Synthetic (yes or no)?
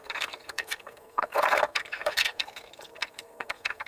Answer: yes